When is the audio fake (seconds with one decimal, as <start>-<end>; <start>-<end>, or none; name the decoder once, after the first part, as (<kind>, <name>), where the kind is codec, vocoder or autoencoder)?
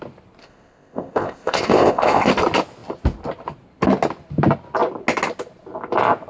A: 0.4-2.3 (codec, ZipCodec)